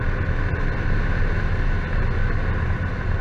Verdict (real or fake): real